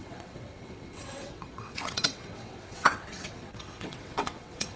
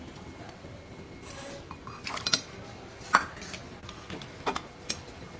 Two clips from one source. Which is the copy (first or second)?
first